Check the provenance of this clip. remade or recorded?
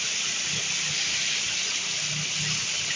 recorded